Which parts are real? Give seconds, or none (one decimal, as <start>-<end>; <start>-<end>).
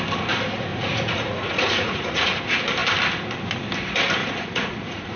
0.0-0.7; 2.4-4.2